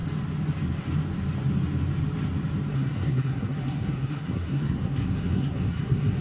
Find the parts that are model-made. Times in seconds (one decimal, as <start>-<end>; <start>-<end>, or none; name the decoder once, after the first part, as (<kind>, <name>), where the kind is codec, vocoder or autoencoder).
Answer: 2.7-6.2 (codec, SNAC)